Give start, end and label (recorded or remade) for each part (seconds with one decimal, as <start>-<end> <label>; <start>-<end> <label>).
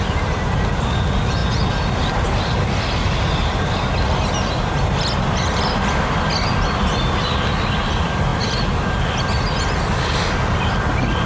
0.0-11.3 recorded